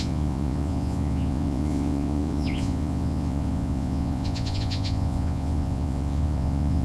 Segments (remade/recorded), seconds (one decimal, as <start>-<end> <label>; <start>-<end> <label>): 0.0-6.8 remade